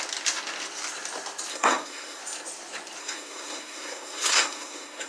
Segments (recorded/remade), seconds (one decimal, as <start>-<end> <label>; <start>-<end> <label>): 0.0-1.5 recorded; 1.5-2.2 remade; 2.2-3.0 recorded; 3.0-5.1 remade